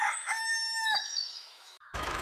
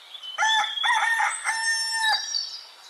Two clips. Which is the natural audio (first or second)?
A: second